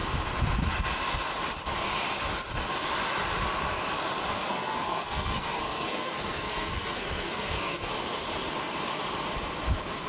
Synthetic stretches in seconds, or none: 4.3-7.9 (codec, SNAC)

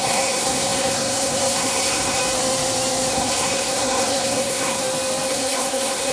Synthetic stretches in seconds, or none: 0.0-2.2 (codec, SNAC); 3.1-4.8; 5.3-6.1